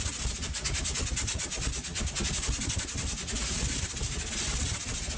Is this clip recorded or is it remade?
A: recorded